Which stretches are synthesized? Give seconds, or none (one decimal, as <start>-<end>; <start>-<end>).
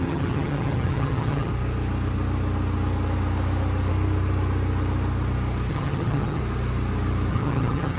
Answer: 0.0-1.5; 5.7-6.4; 7.3-8.0